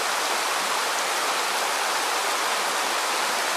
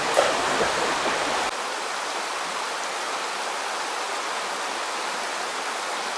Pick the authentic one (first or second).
second